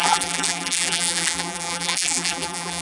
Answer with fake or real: fake